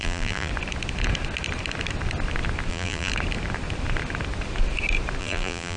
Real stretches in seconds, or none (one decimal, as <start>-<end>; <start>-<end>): 0.5-2.7; 3.1-5.2